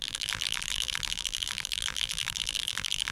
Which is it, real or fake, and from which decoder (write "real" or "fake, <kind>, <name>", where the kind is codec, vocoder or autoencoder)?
fake, vocoder, BigVGAN v2